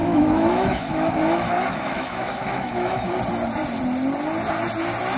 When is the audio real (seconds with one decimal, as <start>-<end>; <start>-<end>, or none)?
3.1-5.2